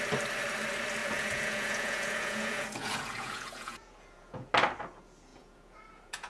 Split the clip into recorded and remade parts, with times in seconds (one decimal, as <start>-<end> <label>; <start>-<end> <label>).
0.0-1.0 recorded; 1.0-4.5 remade; 4.5-5.3 recorded; 5.3-6.3 remade